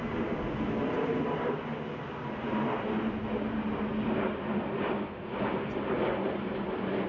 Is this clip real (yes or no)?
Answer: yes